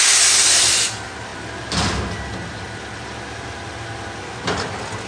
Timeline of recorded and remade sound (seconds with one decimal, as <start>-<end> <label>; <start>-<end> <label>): 0.0-5.1 recorded